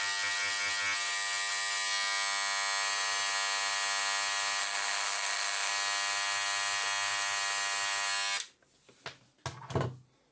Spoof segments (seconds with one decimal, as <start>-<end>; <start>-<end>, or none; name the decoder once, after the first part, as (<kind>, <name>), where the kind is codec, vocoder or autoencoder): 4.6-5.7 (codec, SNAC)